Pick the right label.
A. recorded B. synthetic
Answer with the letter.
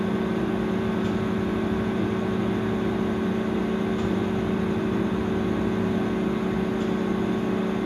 A